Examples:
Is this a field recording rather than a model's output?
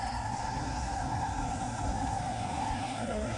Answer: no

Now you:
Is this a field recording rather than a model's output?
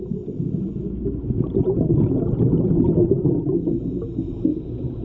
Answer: yes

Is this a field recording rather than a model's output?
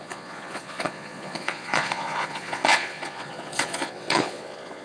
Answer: no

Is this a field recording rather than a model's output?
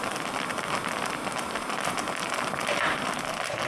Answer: no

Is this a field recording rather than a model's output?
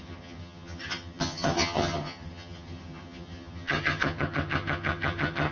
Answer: no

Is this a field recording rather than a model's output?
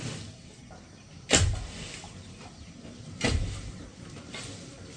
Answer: no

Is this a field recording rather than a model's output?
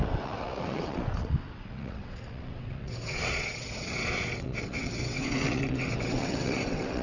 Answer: no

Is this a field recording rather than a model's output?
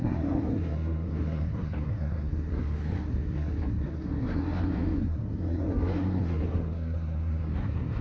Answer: no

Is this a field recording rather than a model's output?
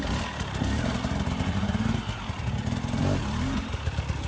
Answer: yes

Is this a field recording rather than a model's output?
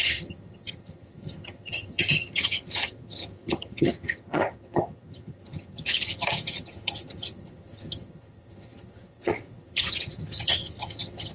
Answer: no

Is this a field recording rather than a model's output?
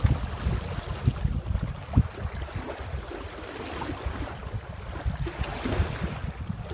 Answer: yes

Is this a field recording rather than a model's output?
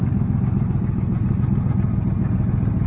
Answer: yes